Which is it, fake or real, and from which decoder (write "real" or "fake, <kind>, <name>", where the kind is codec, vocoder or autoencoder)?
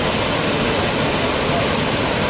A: real